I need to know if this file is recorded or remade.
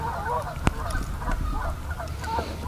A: recorded